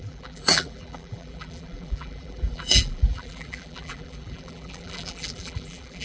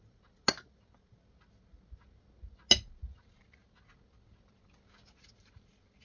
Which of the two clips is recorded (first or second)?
second